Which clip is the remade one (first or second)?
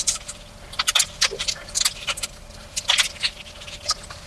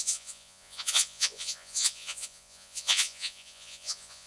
second